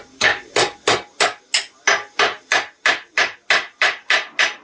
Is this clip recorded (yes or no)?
yes